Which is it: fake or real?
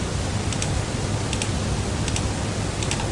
real